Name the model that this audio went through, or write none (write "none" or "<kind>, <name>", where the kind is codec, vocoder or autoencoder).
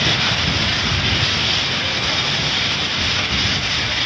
none